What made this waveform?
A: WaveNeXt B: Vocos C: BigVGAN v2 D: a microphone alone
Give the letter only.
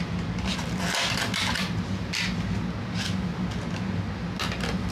D